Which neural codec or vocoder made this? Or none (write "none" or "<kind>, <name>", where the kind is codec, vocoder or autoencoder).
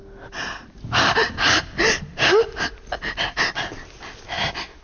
none